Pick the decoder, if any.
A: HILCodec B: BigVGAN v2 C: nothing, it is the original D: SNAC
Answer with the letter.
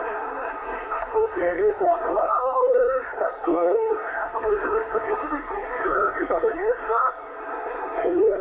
D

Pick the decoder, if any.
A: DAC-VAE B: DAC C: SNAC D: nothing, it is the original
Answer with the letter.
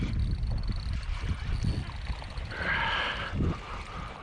D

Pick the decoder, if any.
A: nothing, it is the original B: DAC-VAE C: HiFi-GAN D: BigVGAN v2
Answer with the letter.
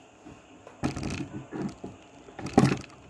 A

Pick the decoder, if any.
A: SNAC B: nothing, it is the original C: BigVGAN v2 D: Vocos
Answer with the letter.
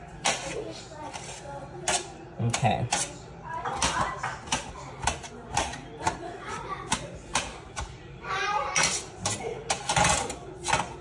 C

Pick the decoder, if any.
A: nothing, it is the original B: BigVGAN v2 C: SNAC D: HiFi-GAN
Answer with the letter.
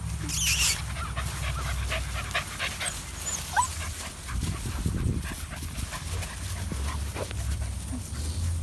A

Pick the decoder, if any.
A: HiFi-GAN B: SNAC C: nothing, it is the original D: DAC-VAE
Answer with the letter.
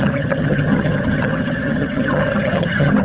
A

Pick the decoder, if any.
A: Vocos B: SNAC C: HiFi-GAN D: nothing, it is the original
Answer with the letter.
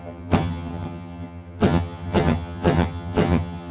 C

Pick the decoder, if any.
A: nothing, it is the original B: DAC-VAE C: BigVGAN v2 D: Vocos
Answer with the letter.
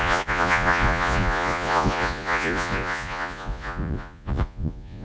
D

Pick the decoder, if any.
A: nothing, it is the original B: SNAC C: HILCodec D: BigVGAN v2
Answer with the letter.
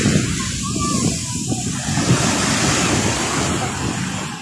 A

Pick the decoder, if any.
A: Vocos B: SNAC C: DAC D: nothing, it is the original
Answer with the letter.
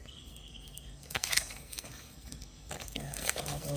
B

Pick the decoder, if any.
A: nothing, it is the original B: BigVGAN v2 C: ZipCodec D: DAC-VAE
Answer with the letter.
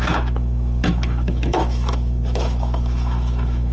D